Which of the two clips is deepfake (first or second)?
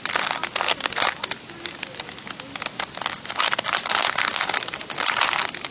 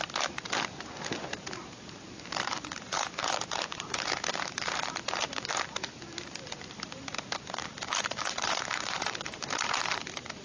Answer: second